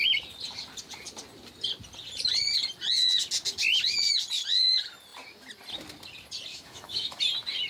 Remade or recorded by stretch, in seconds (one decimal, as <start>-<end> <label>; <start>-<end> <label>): 0.0-6.5 recorded; 6.5-7.2 remade; 7.2-7.7 recorded